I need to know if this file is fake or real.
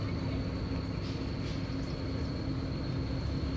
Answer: real